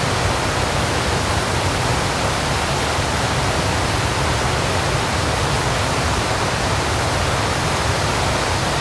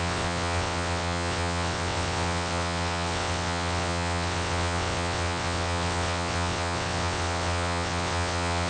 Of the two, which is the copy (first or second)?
second